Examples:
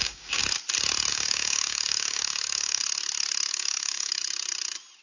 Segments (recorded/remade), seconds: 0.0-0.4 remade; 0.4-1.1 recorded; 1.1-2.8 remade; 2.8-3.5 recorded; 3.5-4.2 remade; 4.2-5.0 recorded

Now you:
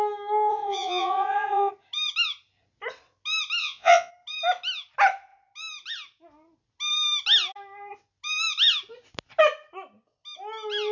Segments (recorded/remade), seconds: 0.0-0.5 recorded; 0.5-1.7 remade; 1.7-3.6 recorded; 3.6-4.1 remade; 4.1-10.9 recorded

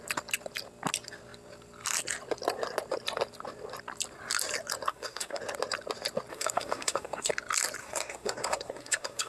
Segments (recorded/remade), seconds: 0.0-4.9 recorded; 4.9-5.4 remade; 5.4-6.3 recorded; 6.3-7.3 remade; 7.3-7.8 recorded; 7.8-9.3 remade